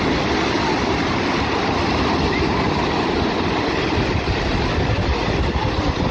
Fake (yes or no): no